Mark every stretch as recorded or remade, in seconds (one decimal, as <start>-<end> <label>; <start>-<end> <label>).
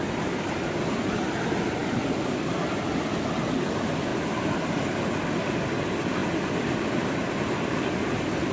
0.0-8.5 recorded